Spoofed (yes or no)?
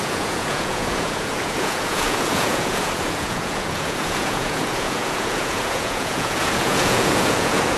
yes